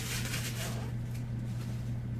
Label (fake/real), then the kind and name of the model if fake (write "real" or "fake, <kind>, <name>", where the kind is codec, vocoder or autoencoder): real